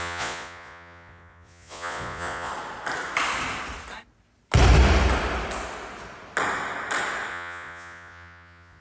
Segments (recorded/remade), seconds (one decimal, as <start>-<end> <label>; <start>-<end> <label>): 0.0-2.5 remade; 2.5-7.3 recorded; 7.3-8.8 remade